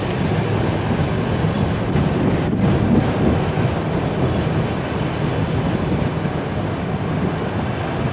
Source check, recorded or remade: recorded